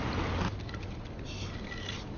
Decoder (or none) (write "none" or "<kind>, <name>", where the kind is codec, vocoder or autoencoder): none